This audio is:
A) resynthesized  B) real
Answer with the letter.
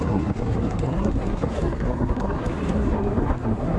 A